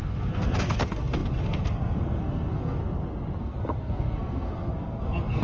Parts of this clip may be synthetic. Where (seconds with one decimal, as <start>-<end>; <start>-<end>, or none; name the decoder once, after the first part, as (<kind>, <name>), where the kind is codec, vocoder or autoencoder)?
0.0-2.8 (codec, SNAC); 3.4-5.4